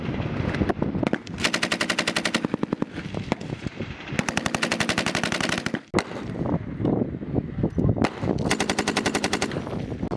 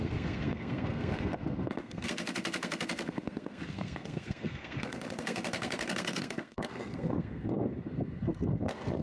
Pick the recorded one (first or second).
first